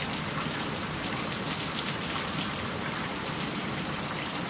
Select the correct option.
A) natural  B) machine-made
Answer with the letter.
A